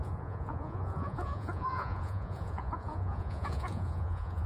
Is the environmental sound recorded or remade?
remade